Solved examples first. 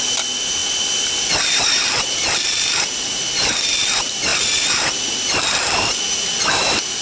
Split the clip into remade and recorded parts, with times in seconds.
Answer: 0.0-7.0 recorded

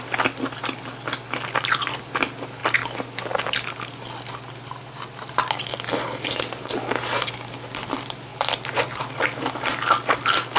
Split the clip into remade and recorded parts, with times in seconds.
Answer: 0.0-10.6 recorded

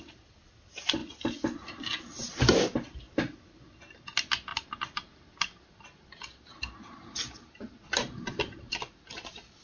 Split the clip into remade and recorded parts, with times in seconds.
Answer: 0.0-9.6 recorded

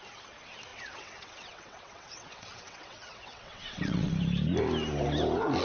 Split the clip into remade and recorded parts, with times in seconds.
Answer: 0.0-0.7 recorded; 0.7-4.1 remade; 4.1-5.6 recorded

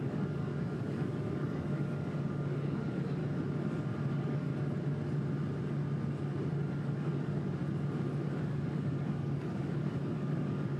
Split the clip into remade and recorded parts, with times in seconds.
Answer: 0.0-3.2 remade; 3.2-4.1 recorded; 4.1-4.5 remade; 4.5-6.7 recorded; 6.7-7.6 remade; 7.6-8.4 recorded; 8.4-10.8 remade

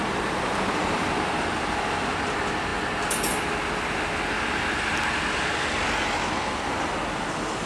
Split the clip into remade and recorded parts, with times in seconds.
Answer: 0.0-1.1 remade; 1.1-7.7 recorded

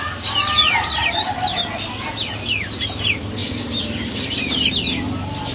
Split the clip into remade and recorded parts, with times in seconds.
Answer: 0.0-3.4 recorded; 3.4-4.3 remade; 4.3-5.5 recorded

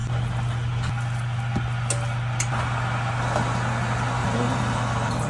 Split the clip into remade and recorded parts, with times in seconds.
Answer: 0.0-4.2 recorded; 4.2-5.3 remade